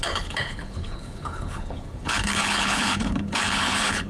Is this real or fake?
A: fake